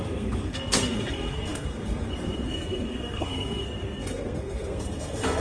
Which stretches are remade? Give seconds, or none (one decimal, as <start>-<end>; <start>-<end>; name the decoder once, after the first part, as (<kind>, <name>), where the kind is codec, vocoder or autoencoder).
0.0-5.4 (codec, SNAC)